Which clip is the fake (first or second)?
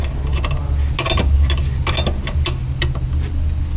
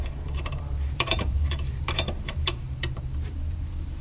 second